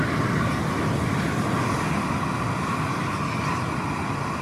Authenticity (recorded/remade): recorded